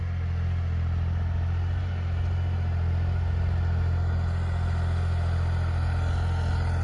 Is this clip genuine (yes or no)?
yes